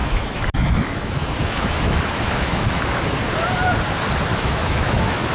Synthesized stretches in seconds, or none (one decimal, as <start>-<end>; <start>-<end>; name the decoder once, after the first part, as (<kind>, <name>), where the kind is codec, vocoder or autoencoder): 0.0-3.2 (autoencoder, DAC-VAE); 4.3-5.3